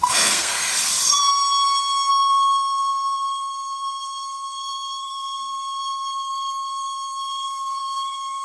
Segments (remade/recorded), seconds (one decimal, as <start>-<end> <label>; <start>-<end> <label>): 0.0-0.7 remade; 0.7-2.1 recorded; 2.1-8.4 remade